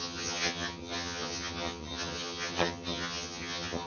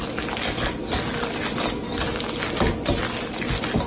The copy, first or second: first